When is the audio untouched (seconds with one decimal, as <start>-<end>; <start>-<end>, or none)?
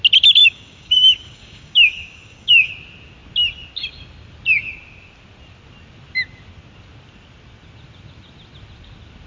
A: 0.0-0.4; 2.7-9.3